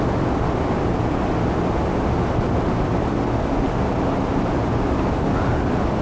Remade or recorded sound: recorded